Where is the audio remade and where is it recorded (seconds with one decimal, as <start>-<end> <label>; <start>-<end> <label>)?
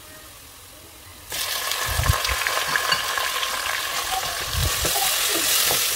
0.0-6.0 recorded